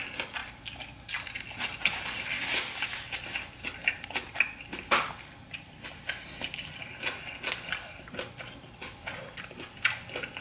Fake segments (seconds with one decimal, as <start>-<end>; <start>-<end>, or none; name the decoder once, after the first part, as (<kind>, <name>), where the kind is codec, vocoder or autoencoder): none